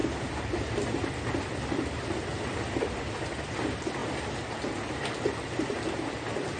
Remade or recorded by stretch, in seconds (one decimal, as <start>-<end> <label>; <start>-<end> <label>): 0.0-6.6 recorded